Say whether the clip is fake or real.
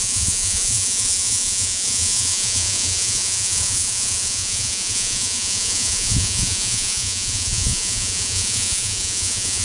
fake